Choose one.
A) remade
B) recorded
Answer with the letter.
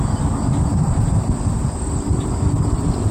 B